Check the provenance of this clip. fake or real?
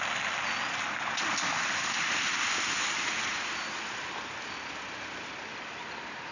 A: real